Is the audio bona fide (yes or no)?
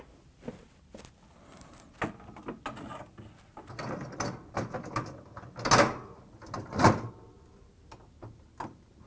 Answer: yes